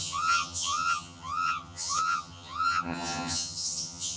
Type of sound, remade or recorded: remade